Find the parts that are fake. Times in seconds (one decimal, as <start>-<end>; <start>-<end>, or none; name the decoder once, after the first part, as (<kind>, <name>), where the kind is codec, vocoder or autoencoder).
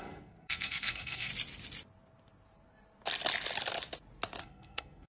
0.0-1.3 (codec, SNAC); 4.4-5.1